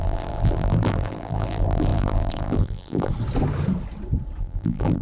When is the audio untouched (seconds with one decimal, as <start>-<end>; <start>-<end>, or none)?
3.1-4.4